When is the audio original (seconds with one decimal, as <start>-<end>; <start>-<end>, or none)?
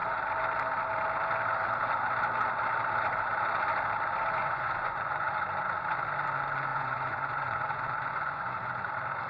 0.0-4.4; 5.3-6.7; 8.9-9.3